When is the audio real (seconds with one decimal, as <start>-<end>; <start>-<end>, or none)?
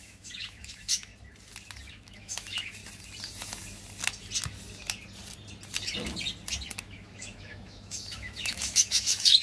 1.1-1.9; 2.8-6.8